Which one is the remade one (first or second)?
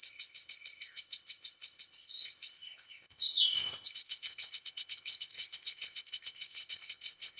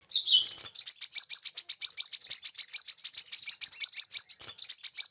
first